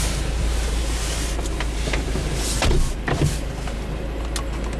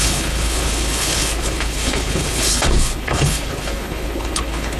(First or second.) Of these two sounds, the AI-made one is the second